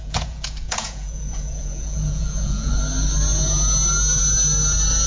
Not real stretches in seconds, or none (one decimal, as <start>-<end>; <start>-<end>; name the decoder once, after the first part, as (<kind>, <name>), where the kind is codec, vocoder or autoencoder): 0.0-2.7 (vocoder, Vocos)